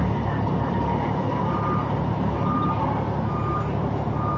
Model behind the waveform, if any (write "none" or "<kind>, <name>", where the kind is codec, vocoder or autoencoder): none